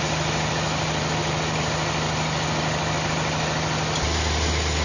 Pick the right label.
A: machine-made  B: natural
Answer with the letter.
B